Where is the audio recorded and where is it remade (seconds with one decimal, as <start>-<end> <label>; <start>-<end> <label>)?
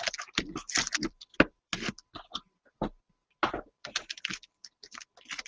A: 0.0-5.5 remade